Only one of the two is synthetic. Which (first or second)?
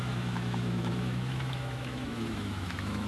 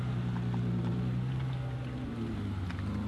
first